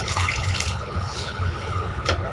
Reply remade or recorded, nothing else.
remade